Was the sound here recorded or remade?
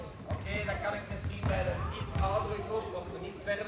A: remade